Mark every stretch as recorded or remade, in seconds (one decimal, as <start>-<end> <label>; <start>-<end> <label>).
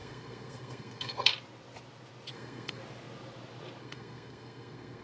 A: 0.0-1.3 remade; 1.3-2.3 recorded; 2.3-2.8 remade; 2.8-3.8 recorded; 3.8-5.0 remade